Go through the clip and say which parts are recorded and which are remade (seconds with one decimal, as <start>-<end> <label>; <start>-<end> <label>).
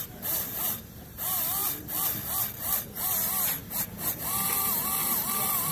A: 0.0-1.6 remade; 1.6-2.8 recorded; 2.8-5.7 remade